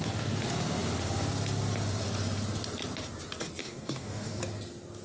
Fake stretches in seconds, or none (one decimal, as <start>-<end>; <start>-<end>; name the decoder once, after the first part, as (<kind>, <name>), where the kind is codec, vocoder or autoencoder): 3.6-4.4 (codec, DAC)